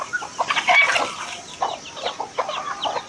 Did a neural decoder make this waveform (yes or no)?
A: no